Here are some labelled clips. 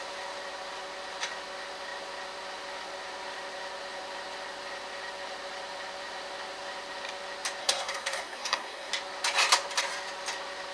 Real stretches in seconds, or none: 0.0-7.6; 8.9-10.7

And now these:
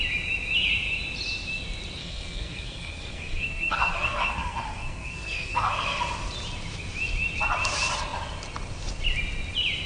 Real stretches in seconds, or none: 0.0-2.0; 6.0-9.9

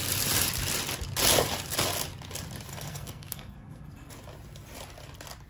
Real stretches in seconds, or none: 0.0-2.7; 4.1-5.5

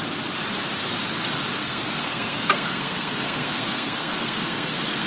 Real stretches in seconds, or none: 0.0-1.6

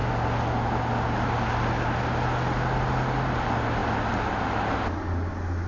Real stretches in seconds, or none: 0.0-5.7

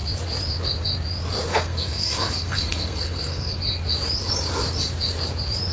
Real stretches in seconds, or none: 0.0-1.5; 3.6-5.7